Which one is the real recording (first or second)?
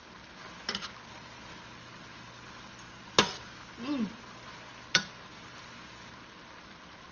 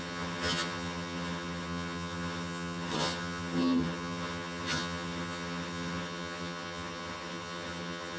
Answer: first